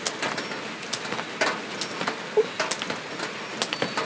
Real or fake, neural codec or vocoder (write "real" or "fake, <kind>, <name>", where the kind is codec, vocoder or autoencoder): real